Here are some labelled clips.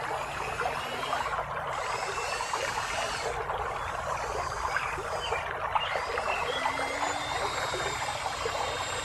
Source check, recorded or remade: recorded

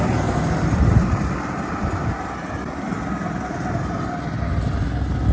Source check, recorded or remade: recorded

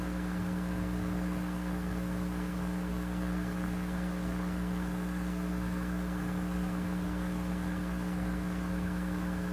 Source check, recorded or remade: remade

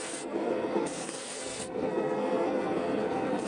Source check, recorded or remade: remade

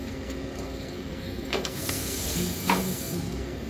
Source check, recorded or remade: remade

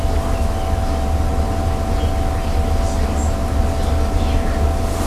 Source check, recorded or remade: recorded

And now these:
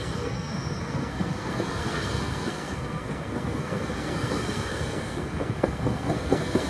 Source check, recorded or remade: remade